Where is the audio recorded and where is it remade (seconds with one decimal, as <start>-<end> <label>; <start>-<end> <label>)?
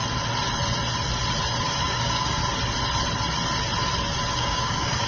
0.0-1.8 recorded; 1.8-2.4 remade; 2.4-4.3 recorded; 4.3-5.1 remade